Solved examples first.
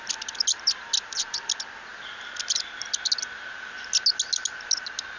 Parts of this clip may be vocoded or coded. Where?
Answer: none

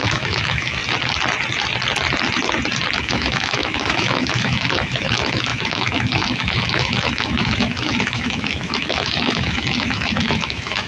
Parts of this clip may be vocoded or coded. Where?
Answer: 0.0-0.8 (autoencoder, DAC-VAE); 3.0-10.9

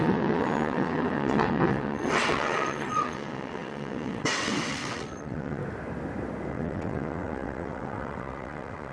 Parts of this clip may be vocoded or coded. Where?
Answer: 0.0-5.6 (vocoder, WaveNeXt); 6.5-8.9

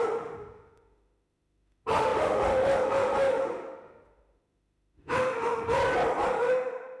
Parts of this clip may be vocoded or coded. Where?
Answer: 0.0-5.8 (autoencoder, DAC-VAE); 6.3-7.0

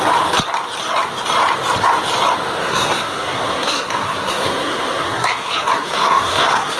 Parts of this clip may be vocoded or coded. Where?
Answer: 2.6-6.8 (codec, SNAC)